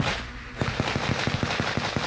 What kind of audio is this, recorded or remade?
recorded